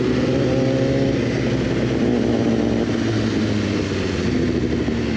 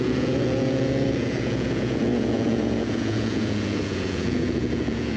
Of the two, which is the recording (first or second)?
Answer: first